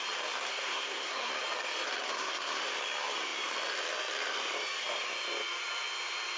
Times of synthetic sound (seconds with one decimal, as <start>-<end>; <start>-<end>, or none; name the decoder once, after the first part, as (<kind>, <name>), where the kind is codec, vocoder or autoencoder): 0.5-1.3 (codec, SNAC); 2.1-2.6

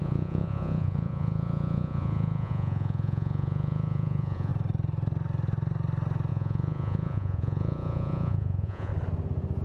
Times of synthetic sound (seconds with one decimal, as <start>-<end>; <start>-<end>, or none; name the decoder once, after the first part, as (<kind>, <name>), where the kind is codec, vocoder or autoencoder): 0.0-4.5 (vocoder, Vocos); 6.3-8.9

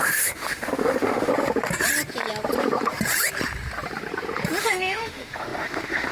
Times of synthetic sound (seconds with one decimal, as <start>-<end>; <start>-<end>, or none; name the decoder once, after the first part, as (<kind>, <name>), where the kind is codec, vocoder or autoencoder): 0.0-1.3 (autoencoder, DAC-VAE); 4.6-6.1